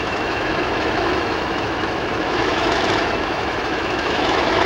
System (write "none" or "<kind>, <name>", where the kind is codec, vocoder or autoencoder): autoencoder, DAC-VAE